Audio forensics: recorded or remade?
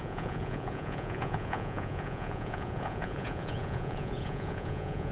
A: remade